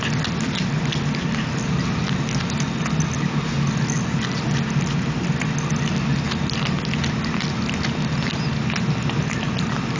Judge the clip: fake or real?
real